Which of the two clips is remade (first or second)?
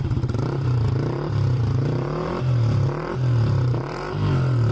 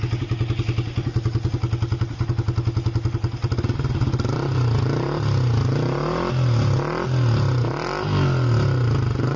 first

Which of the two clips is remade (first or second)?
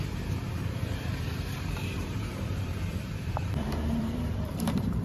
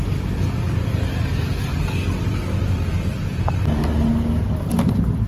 first